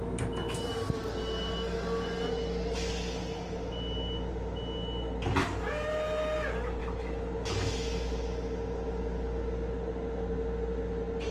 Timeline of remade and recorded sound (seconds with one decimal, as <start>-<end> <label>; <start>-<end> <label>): 0.0-6.8 recorded; 6.8-7.5 remade; 7.5-11.3 recorded